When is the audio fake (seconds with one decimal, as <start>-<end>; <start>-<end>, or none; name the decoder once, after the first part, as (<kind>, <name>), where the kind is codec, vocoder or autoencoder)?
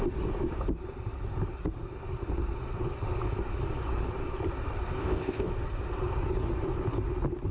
5.0-5.5 (codec, ZipCodec)